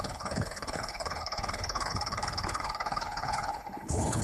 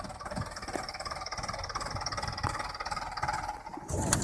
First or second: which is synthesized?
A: first